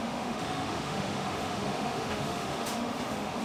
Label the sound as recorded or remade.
remade